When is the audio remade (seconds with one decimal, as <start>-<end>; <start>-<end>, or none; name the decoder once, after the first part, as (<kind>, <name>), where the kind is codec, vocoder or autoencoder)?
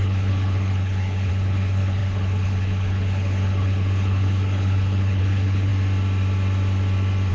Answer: 0.0-5.7 (codec, HILCodec)